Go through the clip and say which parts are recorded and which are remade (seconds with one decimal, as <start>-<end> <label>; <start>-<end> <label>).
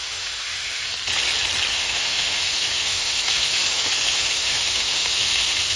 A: 0.0-0.9 remade; 0.9-1.7 recorded; 1.7-5.8 remade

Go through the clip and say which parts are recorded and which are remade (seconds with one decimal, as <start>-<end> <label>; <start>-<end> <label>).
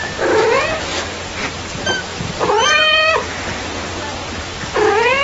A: 0.0-2.1 recorded; 2.1-4.6 remade; 4.6-5.2 recorded